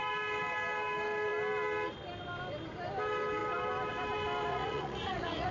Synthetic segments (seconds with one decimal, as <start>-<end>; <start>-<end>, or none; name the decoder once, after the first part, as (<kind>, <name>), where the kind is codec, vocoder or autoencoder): 4.5-5.5 (vocoder, Vocos)